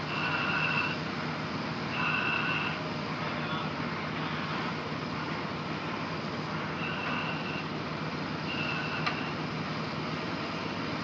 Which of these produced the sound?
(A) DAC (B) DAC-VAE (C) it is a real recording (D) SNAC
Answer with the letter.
C